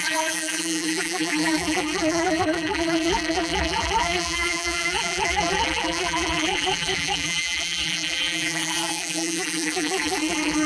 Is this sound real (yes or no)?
no